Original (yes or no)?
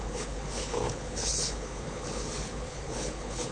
no